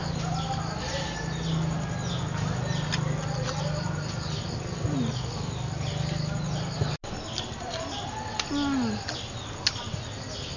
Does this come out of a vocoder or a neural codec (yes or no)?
no